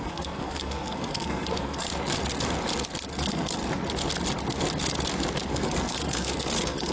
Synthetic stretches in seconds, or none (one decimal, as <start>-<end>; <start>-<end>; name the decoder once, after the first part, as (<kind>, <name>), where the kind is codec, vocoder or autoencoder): 0.0-1.9 (codec, SNAC); 3.1-3.6; 5.5-6.9